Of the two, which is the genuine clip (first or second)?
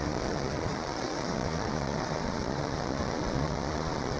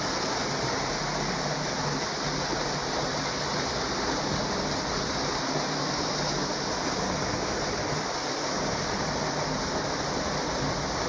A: second